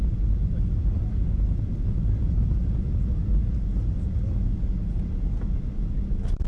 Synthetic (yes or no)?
no